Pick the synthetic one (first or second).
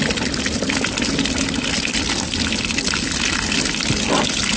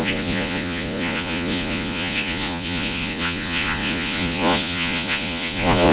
second